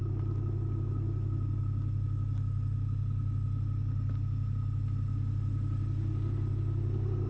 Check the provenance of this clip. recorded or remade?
recorded